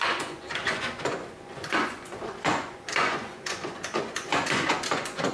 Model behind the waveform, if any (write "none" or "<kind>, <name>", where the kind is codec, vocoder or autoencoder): vocoder, Vocos